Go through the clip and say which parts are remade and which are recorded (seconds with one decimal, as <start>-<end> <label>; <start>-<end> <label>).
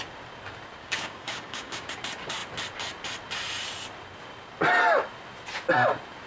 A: 0.0-0.8 recorded; 0.8-1.9 remade; 1.9-6.3 recorded